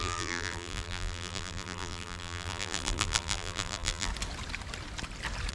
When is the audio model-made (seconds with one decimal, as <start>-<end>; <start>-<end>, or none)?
0.0-4.1